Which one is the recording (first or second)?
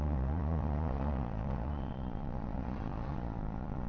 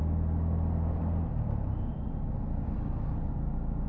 second